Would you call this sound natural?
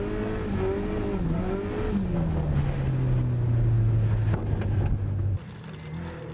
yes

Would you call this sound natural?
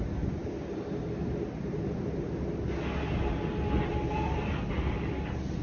yes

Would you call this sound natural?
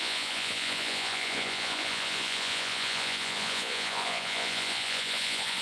no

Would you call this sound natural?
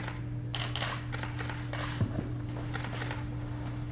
yes